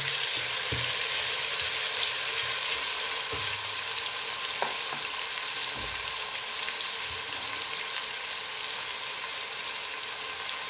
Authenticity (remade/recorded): recorded